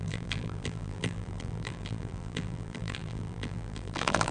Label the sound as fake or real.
fake